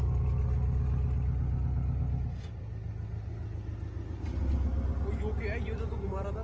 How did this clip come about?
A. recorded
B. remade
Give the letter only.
A